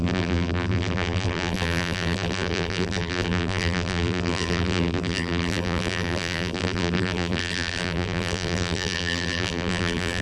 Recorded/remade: remade